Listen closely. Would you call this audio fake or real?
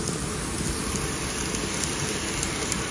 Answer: real